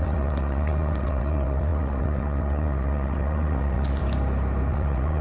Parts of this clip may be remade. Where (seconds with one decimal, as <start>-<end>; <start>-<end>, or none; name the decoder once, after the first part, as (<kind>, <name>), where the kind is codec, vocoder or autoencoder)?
0.0-4.0 (vocoder, WaveNeXt); 4.7-5.2